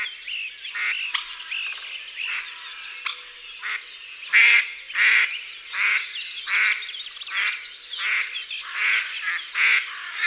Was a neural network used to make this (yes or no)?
no